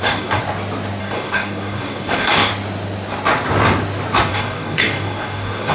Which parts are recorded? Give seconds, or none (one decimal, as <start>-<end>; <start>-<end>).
0.4-1.0; 2.5-4.3